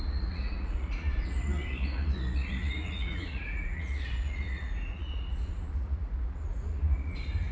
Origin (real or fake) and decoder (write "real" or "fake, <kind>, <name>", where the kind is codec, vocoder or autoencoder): fake, vocoder, Vocos